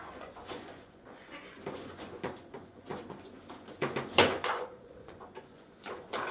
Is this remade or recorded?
remade